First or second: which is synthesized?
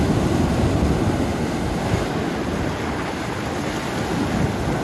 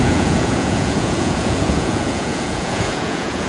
second